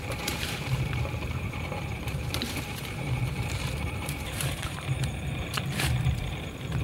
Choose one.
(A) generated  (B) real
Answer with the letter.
A